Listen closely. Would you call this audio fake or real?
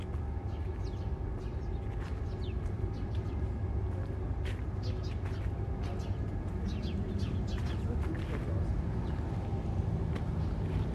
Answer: real